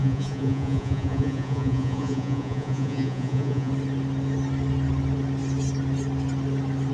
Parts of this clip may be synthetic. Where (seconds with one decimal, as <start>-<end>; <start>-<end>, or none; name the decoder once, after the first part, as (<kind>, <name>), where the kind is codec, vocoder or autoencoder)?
0.0-3.7 (vocoder, Vocos)